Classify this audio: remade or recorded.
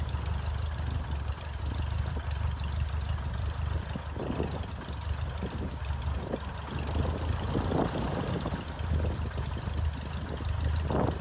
recorded